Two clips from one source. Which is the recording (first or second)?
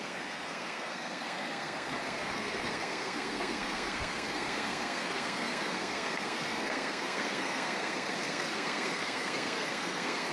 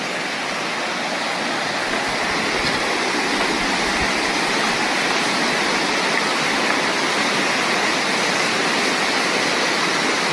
second